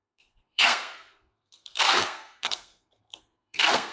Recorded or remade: remade